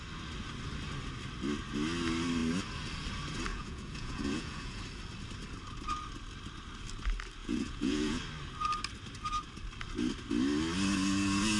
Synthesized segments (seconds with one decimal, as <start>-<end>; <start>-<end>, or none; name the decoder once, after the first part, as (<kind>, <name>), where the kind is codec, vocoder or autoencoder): 3.5-4.8 (vocoder, Vocos); 7.4-8.2